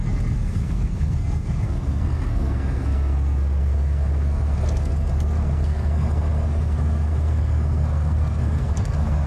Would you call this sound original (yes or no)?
no